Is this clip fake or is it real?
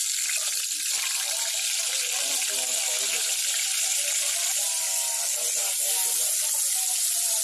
real